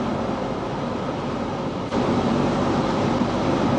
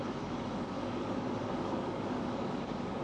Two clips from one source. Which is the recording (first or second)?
first